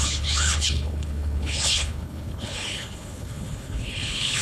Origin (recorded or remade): remade